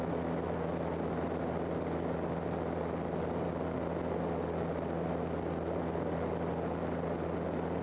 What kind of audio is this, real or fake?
real